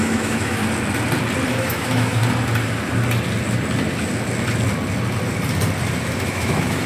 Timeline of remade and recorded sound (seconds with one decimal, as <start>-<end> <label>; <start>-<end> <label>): 0.0-0.6 remade; 0.6-1.5 recorded; 1.5-2.2 remade; 2.2-6.3 recorded; 6.3-6.9 remade